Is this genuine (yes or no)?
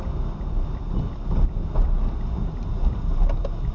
yes